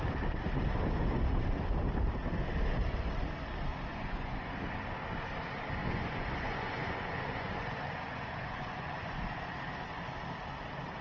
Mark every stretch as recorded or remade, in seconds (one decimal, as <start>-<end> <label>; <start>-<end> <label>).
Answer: 0.0-3.9 recorded; 3.9-4.5 remade; 4.5-5.8 recorded; 5.8-9.2 remade; 9.2-11.0 recorded